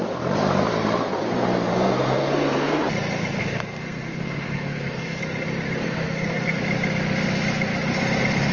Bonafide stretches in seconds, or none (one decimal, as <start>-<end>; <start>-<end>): 0.0-1.7; 2.8-3.4; 5.2-5.8; 6.6-8.5